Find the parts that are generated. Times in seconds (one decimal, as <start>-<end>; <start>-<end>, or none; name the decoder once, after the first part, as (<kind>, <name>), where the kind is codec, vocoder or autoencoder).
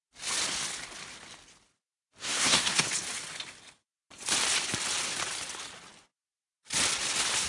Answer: 2.2-2.9 (codec, SNAC)